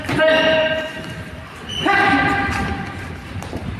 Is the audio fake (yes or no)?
yes